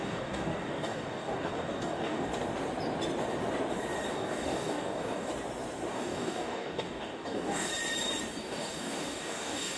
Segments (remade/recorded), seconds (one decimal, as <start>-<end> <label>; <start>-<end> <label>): 0.0-2.3 remade; 2.3-4.1 recorded; 4.1-5.3 remade; 5.3-5.9 recorded; 5.9-7.7 remade; 7.7-8.4 recorded; 8.4-9.8 remade